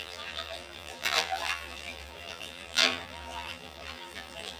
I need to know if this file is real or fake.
fake